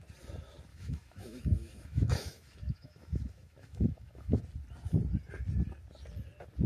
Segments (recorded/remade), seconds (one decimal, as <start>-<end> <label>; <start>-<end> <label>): 0.0-0.7 recorded; 0.7-4.4 remade; 4.4-6.7 recorded